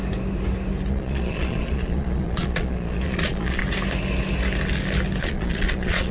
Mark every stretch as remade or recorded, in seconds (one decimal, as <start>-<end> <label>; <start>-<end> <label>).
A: 0.0-0.9 recorded; 0.9-3.6 remade; 3.6-5.2 recorded; 5.2-6.1 remade